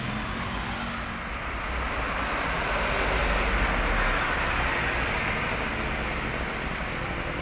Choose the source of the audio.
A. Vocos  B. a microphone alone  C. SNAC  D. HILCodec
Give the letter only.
B